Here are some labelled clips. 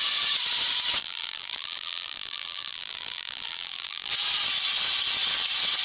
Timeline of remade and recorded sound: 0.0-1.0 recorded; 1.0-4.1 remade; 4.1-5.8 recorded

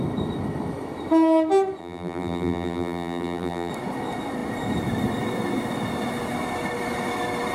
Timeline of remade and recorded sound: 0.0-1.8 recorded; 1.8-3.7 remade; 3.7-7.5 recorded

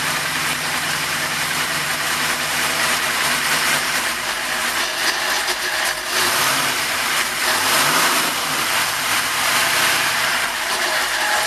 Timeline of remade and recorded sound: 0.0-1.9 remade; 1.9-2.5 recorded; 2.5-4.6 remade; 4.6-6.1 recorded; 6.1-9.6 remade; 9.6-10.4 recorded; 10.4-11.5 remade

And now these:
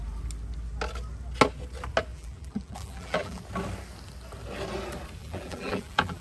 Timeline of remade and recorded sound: 0.0-2.1 recorded; 2.1-3.4 remade; 3.4-5.2 recorded; 5.2-6.2 remade